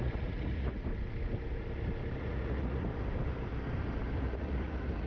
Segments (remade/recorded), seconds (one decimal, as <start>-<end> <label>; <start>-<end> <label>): 0.0-0.9 remade; 0.9-2.2 recorded; 2.2-2.9 remade; 2.9-4.2 recorded; 4.2-5.1 remade